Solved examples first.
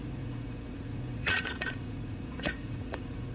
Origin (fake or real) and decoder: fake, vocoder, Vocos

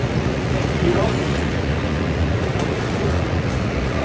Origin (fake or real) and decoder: fake, vocoder, Vocos